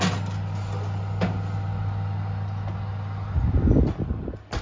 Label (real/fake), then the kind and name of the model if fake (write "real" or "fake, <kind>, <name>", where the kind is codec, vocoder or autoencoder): real